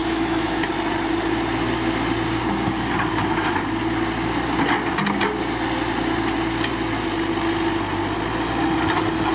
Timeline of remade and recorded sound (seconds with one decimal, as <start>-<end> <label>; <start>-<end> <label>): 0.0-0.7 remade; 0.7-9.3 recorded